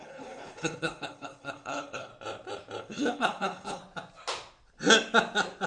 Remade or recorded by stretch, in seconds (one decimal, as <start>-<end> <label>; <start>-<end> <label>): 0.0-2.1 remade; 2.1-2.8 recorded; 2.8-3.8 remade; 3.8-5.7 recorded